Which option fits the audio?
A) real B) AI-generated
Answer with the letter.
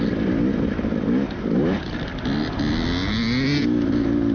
A